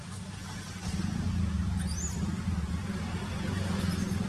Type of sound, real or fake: real